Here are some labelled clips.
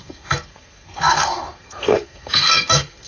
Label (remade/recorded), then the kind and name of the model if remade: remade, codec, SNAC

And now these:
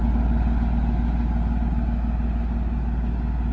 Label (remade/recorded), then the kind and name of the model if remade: recorded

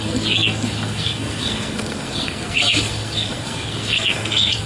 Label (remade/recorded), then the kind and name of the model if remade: remade, codec, SNAC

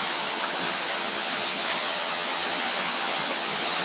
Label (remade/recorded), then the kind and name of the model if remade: remade, vocoder, HiFi-GAN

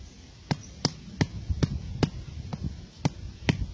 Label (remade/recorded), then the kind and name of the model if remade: recorded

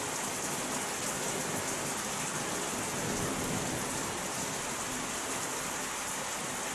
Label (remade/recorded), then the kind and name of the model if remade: recorded